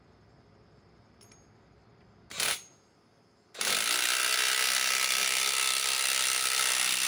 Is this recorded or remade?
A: recorded